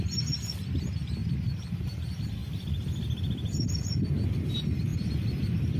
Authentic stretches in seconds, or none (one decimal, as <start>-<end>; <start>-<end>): 0.0-5.8